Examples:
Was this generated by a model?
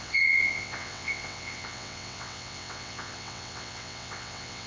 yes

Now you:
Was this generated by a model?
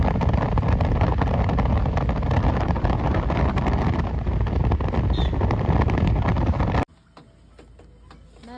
no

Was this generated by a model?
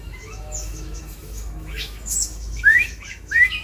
yes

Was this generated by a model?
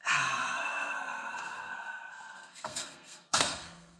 yes